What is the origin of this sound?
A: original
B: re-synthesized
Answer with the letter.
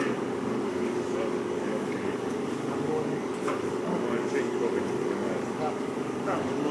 B